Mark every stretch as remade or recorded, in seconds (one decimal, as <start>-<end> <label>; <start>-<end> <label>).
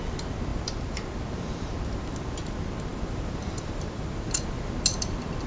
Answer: 0.0-0.5 recorded; 0.5-1.1 remade; 1.1-2.9 recorded; 2.9-4.3 remade; 4.3-5.5 recorded